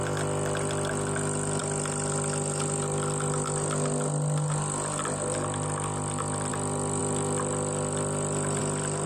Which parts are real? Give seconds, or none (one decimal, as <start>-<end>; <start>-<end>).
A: 0.0-9.1